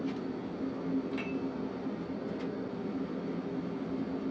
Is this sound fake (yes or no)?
no